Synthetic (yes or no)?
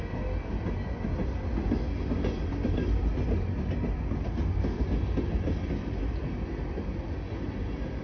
no